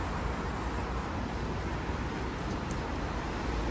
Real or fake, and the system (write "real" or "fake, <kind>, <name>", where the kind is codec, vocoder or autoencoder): real